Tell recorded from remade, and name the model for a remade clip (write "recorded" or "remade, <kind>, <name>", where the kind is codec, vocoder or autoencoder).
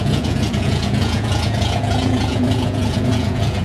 remade, vocoder, Vocos